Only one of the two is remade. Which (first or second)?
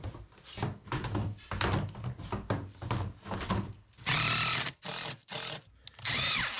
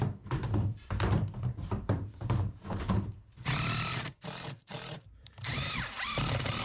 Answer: second